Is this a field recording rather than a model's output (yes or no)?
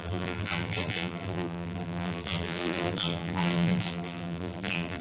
no